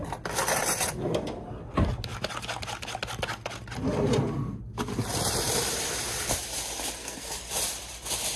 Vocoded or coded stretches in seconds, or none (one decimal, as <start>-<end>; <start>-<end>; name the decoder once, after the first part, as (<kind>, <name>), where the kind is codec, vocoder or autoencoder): 7.0-7.5 (codec, SNAC)